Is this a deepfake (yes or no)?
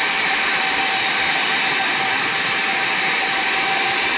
no